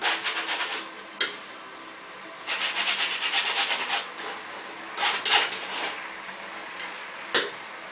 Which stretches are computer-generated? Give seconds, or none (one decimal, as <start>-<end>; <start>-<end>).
6.6-7.2